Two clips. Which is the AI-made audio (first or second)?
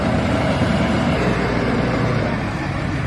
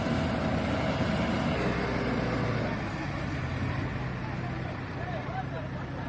first